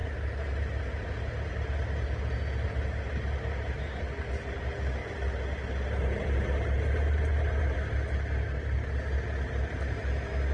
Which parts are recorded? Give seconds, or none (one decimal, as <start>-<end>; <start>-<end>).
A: 0.0-10.5